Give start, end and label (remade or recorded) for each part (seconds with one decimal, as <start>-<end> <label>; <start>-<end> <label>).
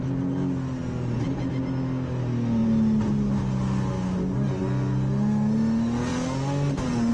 0.0-7.1 recorded